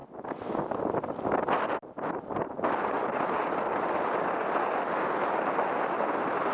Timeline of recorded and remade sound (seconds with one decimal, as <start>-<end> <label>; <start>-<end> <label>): 0.0-6.5 recorded